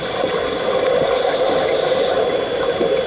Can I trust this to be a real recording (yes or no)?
yes